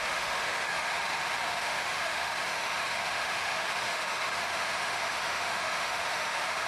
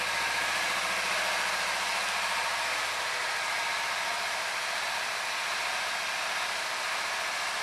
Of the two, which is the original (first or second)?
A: second